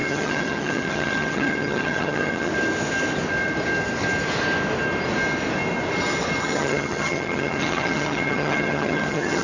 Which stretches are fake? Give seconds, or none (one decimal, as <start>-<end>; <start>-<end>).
0.0-2.5; 6.4-9.4